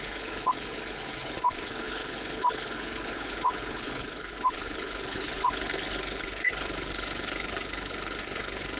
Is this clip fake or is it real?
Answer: fake